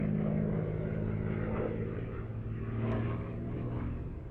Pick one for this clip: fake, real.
fake